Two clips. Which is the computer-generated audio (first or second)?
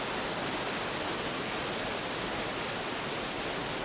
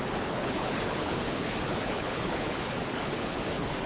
second